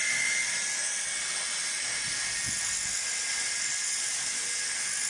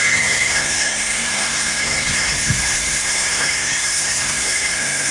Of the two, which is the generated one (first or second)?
second